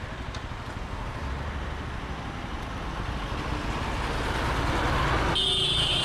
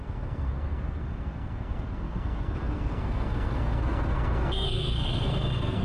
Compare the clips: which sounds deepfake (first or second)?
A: second